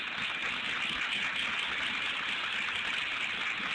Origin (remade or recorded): recorded